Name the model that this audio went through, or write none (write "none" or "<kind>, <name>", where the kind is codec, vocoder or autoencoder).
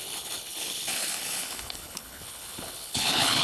codec, HILCodec